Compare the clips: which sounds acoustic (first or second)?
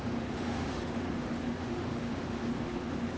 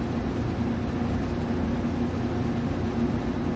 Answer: second